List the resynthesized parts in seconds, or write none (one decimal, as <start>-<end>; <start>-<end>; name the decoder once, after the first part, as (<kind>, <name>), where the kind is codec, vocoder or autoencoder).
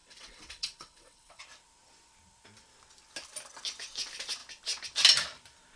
0.0-1.4 (vocoder, WaveNeXt)